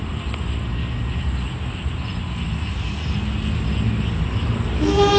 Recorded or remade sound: recorded